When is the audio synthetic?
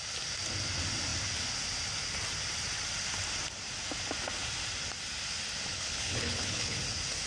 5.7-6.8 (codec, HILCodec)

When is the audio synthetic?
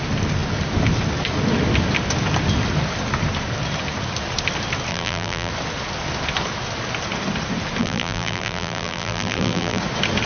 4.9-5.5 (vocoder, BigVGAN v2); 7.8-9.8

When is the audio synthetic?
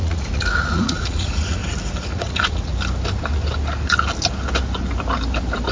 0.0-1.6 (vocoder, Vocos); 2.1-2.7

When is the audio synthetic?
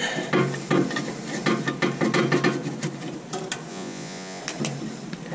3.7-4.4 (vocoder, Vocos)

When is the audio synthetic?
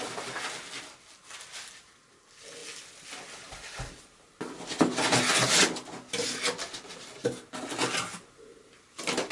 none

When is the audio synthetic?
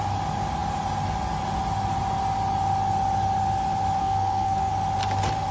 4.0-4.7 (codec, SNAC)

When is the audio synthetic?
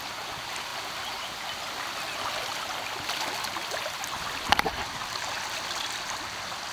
none